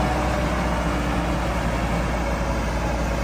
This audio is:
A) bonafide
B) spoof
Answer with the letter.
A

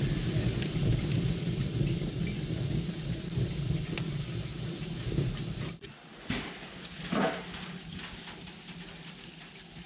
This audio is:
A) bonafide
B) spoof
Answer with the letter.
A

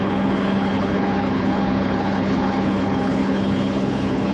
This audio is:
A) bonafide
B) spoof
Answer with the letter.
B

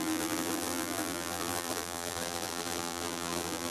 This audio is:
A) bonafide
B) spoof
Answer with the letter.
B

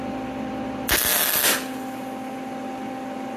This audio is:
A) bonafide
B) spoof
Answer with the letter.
A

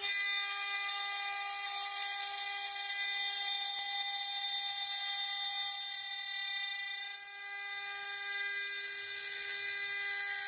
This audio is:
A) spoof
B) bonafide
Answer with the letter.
B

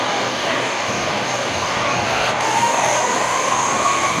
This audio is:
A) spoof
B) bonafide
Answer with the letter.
A